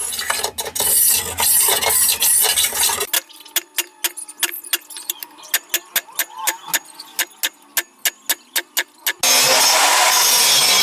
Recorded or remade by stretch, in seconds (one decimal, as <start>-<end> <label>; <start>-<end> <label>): 0.0-2.5 recorded; 2.5-3.1 remade; 3.1-10.8 recorded